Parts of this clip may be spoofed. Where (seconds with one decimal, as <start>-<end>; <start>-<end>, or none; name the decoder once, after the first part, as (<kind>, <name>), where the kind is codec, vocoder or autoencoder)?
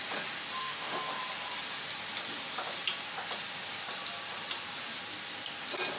0.6-1.1 (autoencoder, DAC-VAE)